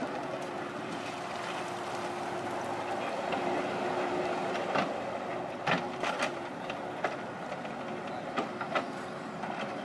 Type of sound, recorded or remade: recorded